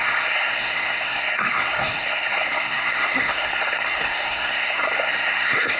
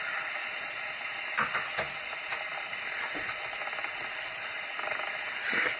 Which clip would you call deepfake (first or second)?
first